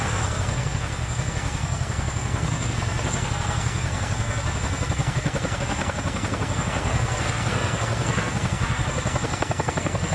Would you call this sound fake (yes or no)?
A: yes